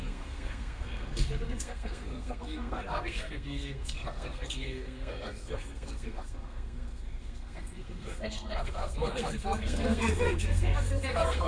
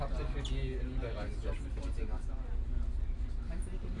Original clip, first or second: second